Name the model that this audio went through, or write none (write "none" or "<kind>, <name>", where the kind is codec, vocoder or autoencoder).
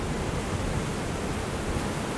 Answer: none